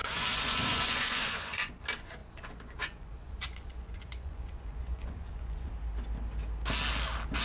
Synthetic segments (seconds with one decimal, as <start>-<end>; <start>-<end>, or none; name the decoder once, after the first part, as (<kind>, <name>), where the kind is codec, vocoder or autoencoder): 0.0-1.7 (vocoder, Vocos); 2.2-5.7